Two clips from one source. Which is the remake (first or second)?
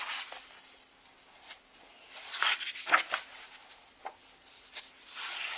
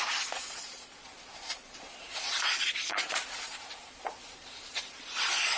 second